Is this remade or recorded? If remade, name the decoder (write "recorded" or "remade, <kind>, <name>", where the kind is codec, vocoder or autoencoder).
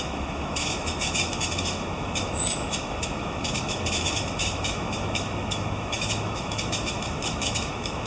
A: remade, autoencoder, DAC-VAE